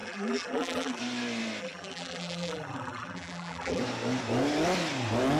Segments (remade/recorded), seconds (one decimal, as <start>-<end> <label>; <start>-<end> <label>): 0.0-1.0 remade; 1.0-1.6 recorded; 1.6-3.8 remade; 3.8-5.4 recorded